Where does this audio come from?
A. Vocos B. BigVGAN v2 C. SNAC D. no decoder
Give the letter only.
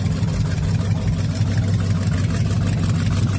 D